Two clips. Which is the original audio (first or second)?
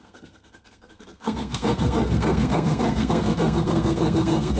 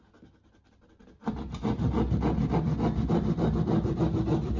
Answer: second